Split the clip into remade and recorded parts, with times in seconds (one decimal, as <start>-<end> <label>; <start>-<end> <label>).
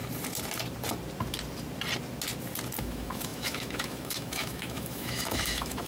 0.0-2.8 recorded; 2.8-5.9 remade